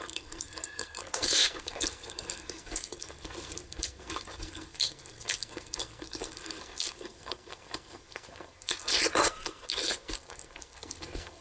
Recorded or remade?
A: remade